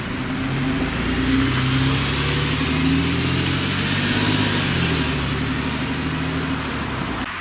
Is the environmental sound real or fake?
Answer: real